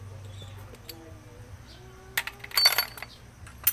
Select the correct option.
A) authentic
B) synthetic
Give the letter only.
A